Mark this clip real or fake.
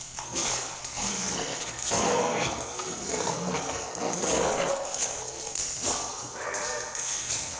fake